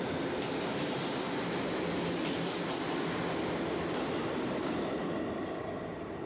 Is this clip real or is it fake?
real